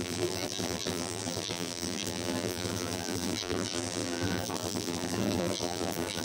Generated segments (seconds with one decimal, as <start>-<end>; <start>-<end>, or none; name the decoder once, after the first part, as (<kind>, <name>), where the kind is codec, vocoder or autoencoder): 0.0-6.2 (vocoder, BigVGAN v2)